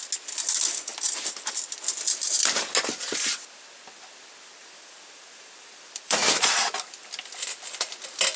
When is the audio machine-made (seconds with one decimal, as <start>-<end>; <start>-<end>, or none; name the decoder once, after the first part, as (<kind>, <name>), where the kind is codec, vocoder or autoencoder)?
4.6-7.0 (vocoder, BigVGAN v2)